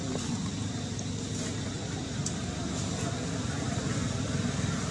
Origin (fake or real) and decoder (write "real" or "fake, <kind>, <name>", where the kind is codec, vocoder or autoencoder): real